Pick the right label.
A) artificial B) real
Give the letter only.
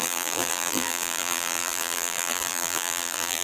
A